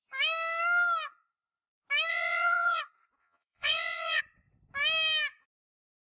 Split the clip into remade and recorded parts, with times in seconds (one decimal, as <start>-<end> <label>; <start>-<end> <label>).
0.0-2.1 recorded; 2.1-2.8 remade; 2.8-3.2 recorded; 3.2-4.2 remade; 4.2-6.1 recorded